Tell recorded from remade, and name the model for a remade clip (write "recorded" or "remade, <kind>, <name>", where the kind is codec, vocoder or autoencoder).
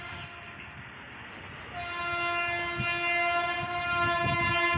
recorded